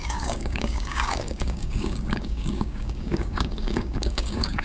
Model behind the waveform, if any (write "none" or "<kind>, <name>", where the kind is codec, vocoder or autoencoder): codec, DAC